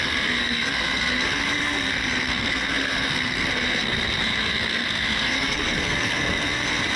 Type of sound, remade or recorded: remade